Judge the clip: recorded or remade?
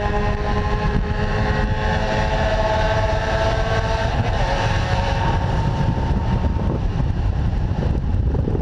remade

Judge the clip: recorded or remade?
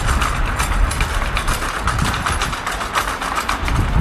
recorded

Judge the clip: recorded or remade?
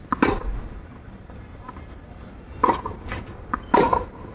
recorded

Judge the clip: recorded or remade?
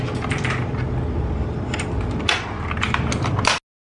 recorded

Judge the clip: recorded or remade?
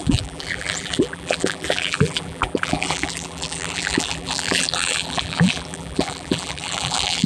remade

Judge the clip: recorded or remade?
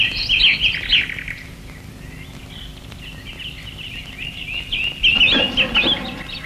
recorded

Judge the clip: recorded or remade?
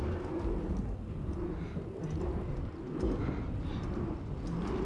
recorded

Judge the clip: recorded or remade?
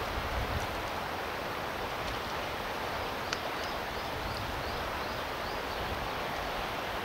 remade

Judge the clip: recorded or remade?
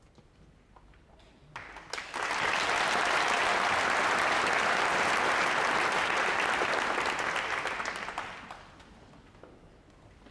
recorded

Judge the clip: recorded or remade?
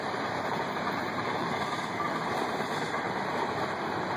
remade